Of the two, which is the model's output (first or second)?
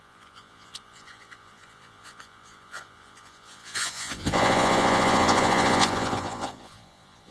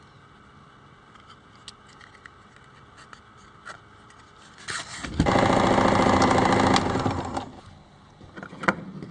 first